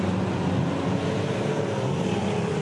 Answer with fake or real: real